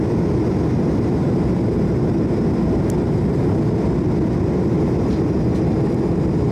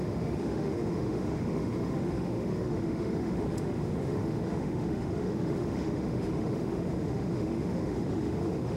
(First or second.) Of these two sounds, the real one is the first